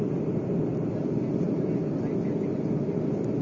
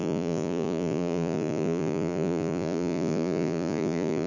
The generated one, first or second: second